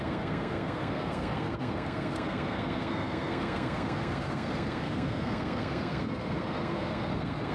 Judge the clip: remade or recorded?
remade